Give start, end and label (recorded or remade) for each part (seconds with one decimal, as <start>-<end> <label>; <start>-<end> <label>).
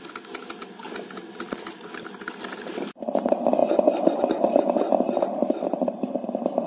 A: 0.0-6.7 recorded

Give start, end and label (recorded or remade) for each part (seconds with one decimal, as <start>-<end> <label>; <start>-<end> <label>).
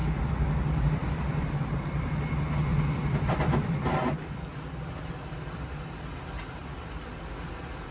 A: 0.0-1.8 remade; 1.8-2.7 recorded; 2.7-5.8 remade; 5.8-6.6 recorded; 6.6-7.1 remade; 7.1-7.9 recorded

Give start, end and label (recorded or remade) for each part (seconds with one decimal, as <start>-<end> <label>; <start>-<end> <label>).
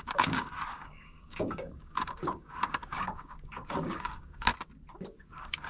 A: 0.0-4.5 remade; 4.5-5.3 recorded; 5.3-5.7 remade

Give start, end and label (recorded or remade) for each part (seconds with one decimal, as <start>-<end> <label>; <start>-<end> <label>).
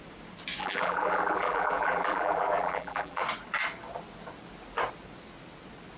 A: 0.0-0.6 recorded; 0.6-3.2 remade; 3.2-6.0 recorded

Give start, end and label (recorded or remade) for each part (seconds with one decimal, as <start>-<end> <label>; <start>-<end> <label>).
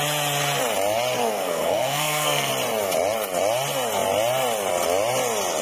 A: 0.0-1.2 recorded; 1.2-2.5 remade; 2.5-5.6 recorded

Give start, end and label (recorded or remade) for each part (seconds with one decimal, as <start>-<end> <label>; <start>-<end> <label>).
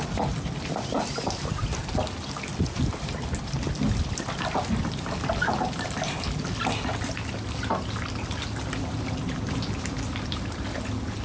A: 0.0-11.2 recorded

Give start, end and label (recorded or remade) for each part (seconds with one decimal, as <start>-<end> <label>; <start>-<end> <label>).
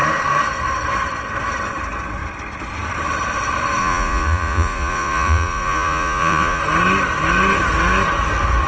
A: 0.0-3.8 recorded; 3.8-6.6 remade; 6.6-8.7 recorded